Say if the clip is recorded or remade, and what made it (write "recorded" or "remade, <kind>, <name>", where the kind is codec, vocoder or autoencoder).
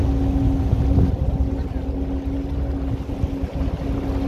recorded